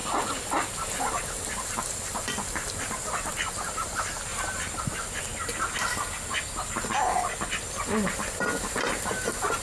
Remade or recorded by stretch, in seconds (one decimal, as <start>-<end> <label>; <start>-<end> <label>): 0.0-9.6 recorded

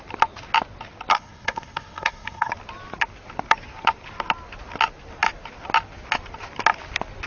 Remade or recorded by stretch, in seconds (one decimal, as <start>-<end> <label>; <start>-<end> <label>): 0.0-1.1 recorded; 1.1-2.5 remade; 2.5-7.3 recorded

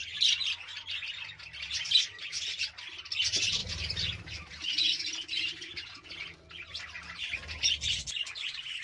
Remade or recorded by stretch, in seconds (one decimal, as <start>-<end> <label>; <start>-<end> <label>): 0.0-8.8 recorded

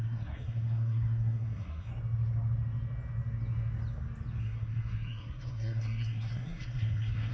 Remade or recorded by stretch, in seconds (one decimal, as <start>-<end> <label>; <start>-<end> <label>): 0.0-1.9 remade; 1.9-4.4 recorded; 4.4-7.3 remade

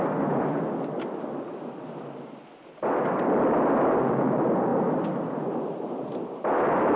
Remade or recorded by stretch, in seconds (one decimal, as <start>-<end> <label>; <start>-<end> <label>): 0.0-7.0 recorded

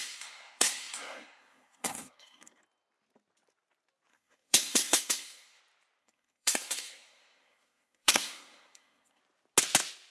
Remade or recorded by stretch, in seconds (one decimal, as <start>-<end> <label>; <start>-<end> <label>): 0.0-2.6 remade; 2.6-4.1 recorded; 4.1-5.6 remade; 5.6-6.0 recorded; 6.0-9.2 remade; 9.2-10.1 recorded

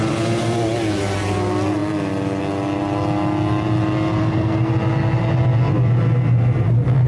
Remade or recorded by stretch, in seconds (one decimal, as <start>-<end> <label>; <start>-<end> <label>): 0.0-4.2 recorded; 4.2-4.7 remade; 4.7-7.1 recorded